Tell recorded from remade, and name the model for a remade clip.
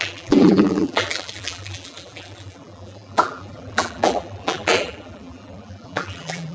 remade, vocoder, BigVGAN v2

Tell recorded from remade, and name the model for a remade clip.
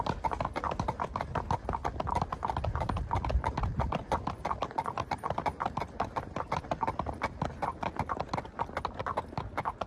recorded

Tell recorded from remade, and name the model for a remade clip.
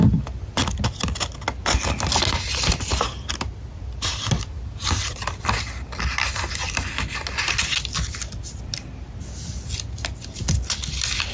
recorded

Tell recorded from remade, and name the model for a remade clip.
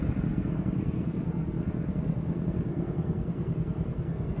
remade, codec, SNAC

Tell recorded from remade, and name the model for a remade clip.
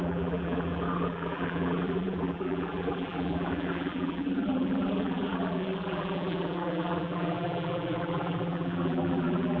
remade, vocoder, BigVGAN v2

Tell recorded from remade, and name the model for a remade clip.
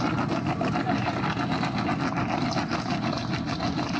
recorded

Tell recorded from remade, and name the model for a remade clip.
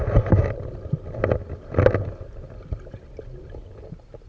recorded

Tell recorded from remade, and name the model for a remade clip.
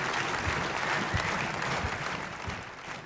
remade, vocoder, BigVGAN v2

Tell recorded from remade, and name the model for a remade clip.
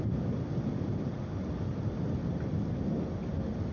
recorded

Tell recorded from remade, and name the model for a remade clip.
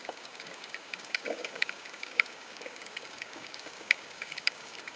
remade, codec, DAC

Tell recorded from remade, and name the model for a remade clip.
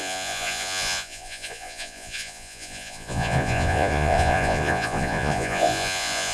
remade, vocoder, Vocos